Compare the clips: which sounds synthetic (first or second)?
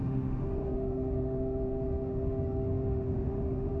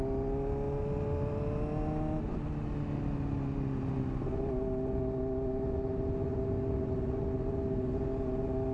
first